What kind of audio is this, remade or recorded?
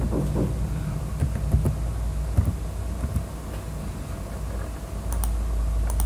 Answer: recorded